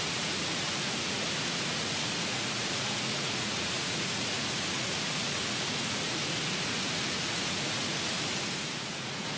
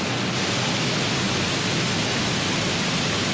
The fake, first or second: first